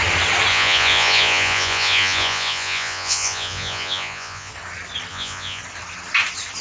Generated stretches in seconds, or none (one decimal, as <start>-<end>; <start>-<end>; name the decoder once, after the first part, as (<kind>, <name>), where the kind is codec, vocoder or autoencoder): 0.5-4.5 (vocoder, Vocos); 5.1-5.6